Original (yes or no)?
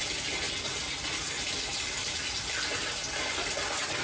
yes